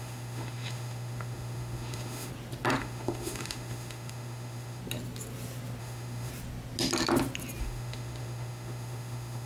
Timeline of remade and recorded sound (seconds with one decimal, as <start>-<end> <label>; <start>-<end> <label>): 0.0-2.3 remade; 2.3-2.8 recorded; 2.8-4.8 remade; 4.8-5.8 recorded; 5.8-6.3 remade; 6.3-7.6 recorded; 7.6-9.5 remade

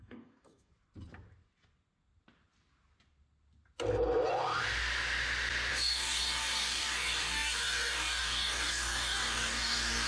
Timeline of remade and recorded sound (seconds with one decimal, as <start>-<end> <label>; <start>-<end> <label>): 0.0-0.7 remade; 0.7-5.7 recorded; 5.7-10.1 remade

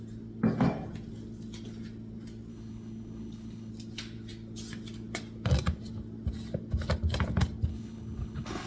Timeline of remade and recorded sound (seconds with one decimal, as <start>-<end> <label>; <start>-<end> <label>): 0.0-2.5 recorded; 2.5-3.7 remade; 3.7-7.7 recorded; 7.7-8.7 remade

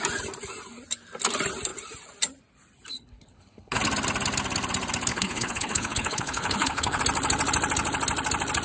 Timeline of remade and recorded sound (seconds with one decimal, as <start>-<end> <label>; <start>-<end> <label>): 0.0-2.9 recorded; 2.9-3.8 remade; 3.8-5.1 recorded; 5.1-7.0 remade; 7.0-8.6 recorded

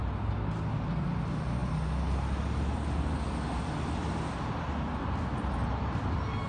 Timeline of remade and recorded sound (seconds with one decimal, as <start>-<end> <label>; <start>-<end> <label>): 0.0-6.5 recorded